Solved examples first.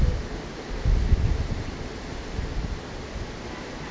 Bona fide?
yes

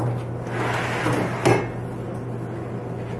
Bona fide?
yes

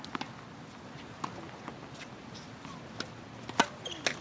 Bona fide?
yes